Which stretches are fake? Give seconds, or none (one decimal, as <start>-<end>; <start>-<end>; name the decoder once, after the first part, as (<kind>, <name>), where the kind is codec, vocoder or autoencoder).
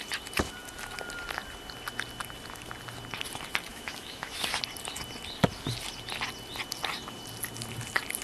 3.7-4.6 (autoencoder, DAC-VAE)